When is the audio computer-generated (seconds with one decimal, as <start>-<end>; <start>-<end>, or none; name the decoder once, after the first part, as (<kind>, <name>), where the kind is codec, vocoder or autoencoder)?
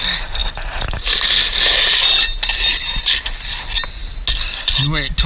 none